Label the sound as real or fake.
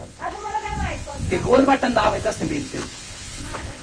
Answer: fake